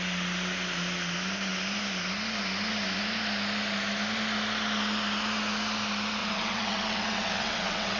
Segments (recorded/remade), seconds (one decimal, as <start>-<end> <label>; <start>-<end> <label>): 0.0-6.2 recorded; 6.2-8.0 remade